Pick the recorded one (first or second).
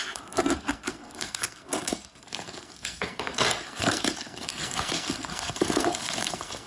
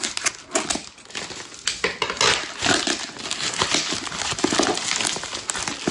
second